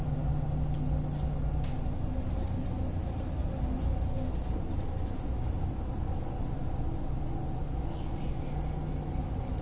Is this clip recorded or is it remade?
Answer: recorded